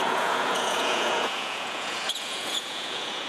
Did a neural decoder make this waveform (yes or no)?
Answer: yes